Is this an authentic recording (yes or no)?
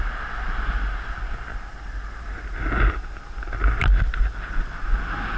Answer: yes